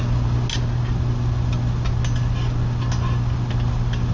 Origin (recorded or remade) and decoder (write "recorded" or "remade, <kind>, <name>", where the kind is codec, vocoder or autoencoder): recorded